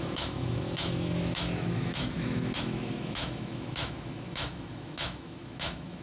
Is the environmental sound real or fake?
fake